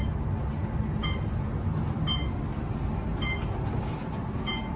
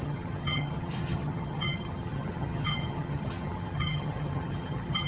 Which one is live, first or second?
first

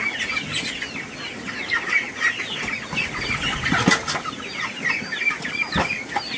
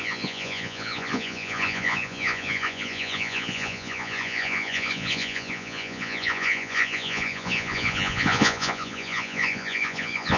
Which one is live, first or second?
first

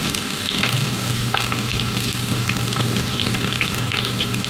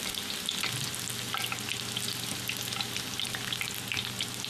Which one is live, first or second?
second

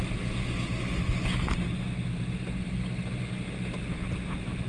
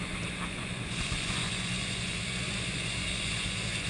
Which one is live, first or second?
first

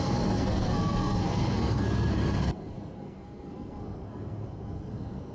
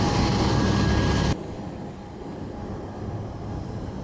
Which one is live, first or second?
second